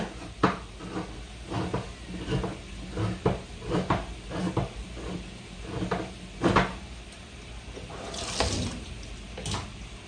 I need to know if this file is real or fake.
real